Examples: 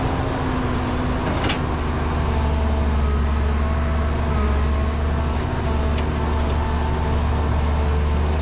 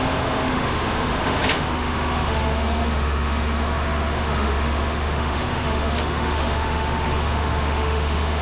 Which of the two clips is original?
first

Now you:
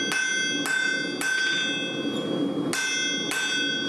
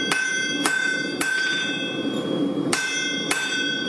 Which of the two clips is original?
first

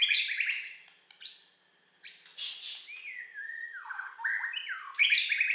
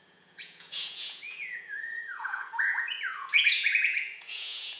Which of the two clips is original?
first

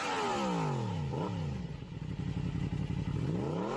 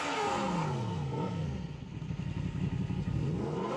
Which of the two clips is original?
first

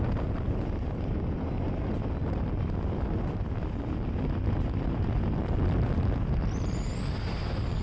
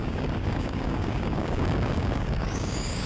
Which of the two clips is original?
first